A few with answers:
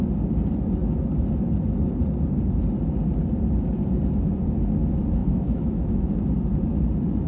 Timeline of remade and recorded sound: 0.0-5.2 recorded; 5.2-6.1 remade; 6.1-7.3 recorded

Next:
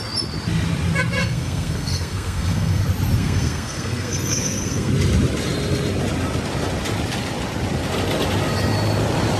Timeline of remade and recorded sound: 0.0-1.2 recorded; 1.2-2.8 remade; 2.8-3.2 recorded; 3.2-4.9 remade; 4.9-9.4 recorded